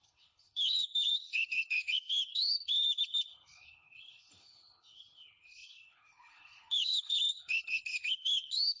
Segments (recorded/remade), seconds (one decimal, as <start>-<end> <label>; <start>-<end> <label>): 0.0-8.8 remade